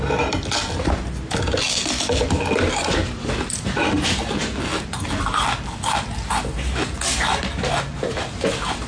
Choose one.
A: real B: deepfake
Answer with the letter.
A